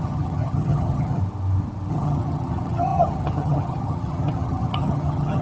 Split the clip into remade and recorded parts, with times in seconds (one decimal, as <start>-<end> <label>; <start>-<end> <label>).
0.0-1.2 remade; 1.2-1.9 recorded; 1.9-5.4 remade